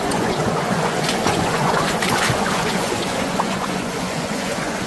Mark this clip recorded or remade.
remade